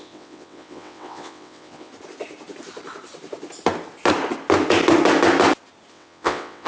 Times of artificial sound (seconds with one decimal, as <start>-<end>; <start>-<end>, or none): 0.0-1.9; 5.9-6.7